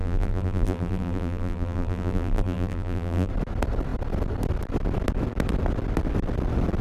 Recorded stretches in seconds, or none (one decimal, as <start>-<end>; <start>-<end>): 3.3-6.8

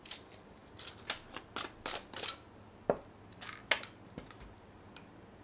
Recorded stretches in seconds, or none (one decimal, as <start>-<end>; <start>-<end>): 0.0-5.4

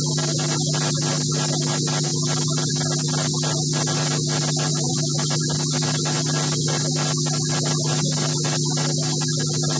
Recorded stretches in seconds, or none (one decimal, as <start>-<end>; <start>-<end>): 0.0-4.7; 5.4-9.8

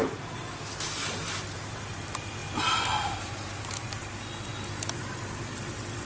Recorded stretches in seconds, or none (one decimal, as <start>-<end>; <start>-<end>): 1.9-6.0

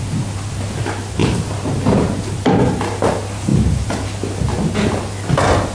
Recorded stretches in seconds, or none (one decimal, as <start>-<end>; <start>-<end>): 0.0-1.2; 2.2-5.7

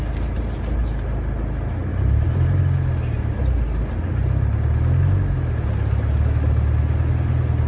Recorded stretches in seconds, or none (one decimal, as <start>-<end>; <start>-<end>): 0.0-1.9; 2.6-7.7

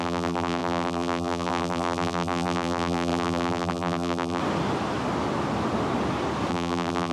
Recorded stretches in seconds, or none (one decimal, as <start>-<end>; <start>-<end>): 4.4-6.5

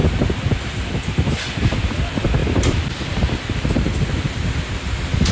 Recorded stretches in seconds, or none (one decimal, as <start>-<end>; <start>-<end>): 1.4-2.4; 3.2-5.3